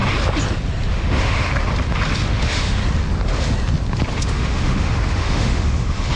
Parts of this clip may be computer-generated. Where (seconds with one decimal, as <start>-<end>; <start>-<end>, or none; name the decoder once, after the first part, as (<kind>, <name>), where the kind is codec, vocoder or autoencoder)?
0.9-1.5 (autoencoder, DAC-VAE); 2.3-2.8; 4.1-6.2